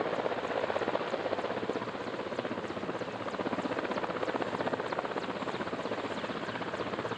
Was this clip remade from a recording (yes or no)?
no